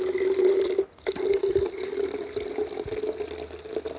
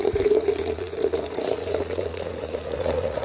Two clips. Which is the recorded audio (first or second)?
first